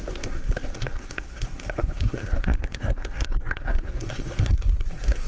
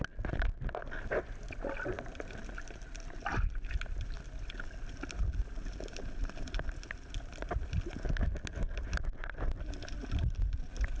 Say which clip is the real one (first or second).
second